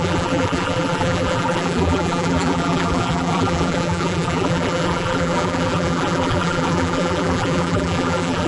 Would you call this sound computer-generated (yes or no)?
yes